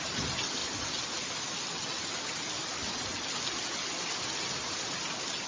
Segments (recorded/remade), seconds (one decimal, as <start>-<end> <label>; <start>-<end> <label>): 0.0-5.5 recorded